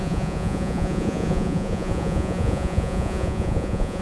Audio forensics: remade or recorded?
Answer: remade